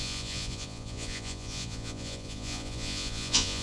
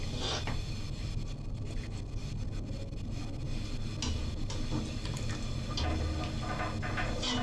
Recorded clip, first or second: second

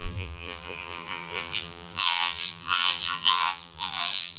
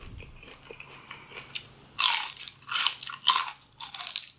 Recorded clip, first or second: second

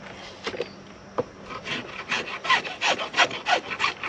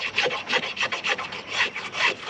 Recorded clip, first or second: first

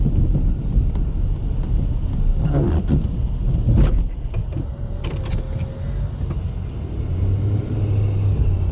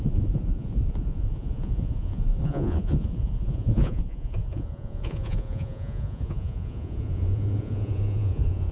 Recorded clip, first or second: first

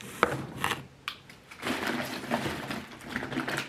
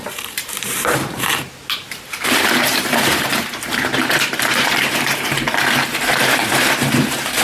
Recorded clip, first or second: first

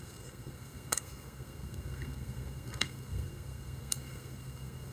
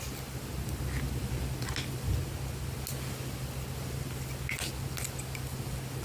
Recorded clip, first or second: second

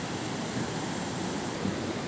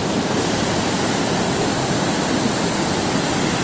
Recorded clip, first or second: second